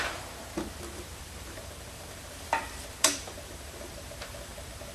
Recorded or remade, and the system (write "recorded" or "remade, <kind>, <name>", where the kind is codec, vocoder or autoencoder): remade, vocoder, BigVGAN v2